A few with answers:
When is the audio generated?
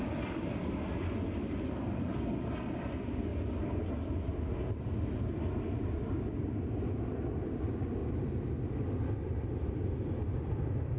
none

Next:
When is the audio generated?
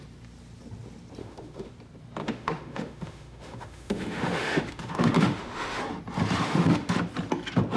1.2-1.7 (autoencoder, DAC-VAE); 2.2-5.8; 6.4-7.0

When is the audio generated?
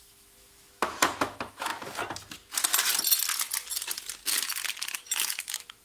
0.0-1.7 (autoencoder, DAC-VAE); 5.2-5.8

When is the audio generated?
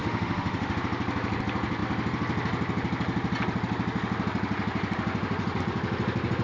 0.0-0.8 (autoencoder, DAC-VAE)